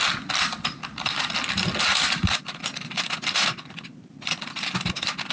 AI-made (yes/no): no